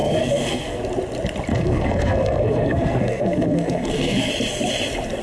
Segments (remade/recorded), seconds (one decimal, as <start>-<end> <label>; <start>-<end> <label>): 0.0-0.8 remade; 0.8-1.5 recorded; 1.5-4.3 remade; 4.3-5.2 recorded